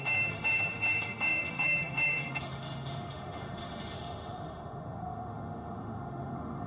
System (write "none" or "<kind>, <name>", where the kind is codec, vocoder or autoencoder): autoencoder, DAC-VAE